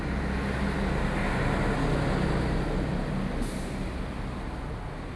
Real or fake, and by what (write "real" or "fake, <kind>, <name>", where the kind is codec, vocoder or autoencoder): real